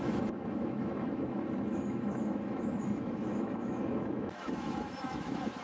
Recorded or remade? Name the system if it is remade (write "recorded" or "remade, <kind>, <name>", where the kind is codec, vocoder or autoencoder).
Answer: remade, autoencoder, DAC-VAE